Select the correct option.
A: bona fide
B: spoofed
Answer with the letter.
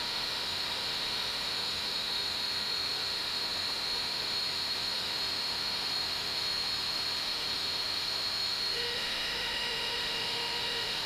B